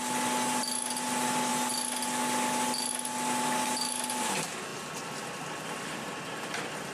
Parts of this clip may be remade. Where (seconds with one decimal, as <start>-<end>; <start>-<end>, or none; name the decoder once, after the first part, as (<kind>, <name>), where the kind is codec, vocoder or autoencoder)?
none